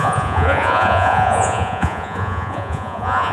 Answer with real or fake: fake